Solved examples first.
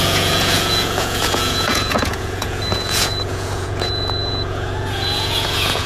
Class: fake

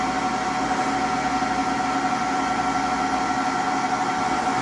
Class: real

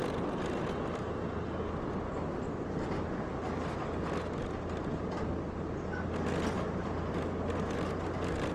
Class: real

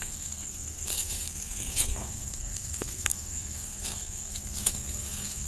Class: fake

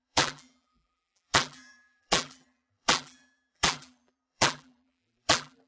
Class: fake